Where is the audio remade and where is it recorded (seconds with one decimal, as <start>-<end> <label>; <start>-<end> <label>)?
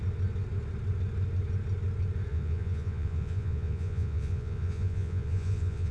0.0-2.3 recorded; 2.3-5.9 remade